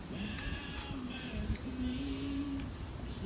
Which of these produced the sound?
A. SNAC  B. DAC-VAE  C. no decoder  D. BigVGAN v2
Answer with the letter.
C